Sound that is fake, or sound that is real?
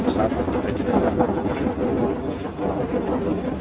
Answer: real